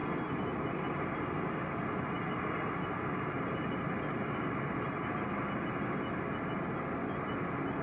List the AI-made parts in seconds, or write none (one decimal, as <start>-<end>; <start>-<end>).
none